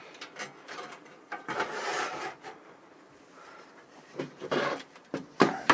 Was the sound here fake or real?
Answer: fake